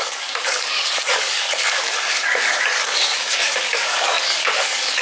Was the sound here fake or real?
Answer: fake